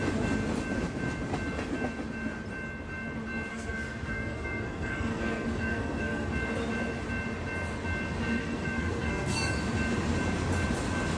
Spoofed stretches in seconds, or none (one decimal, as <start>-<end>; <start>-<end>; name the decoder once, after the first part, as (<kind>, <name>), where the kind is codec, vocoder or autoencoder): 3.5-6.3 (codec, SNAC); 8.4-9.5